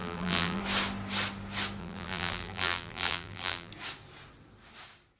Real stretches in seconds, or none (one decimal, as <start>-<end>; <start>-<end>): 0.6-1.8; 3.7-5.2